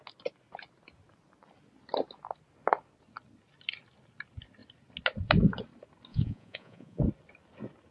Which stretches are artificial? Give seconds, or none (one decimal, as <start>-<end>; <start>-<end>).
6.1-7.0